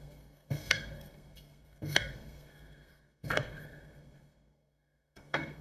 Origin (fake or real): fake